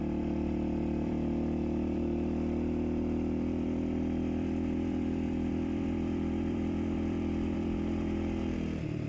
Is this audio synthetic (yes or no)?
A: yes